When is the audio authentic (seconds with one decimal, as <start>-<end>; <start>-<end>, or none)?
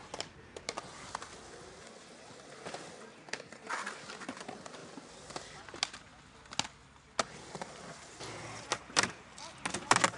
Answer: 0.0-10.2